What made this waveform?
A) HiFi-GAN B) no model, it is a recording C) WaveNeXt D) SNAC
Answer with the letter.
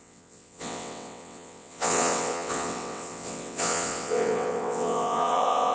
C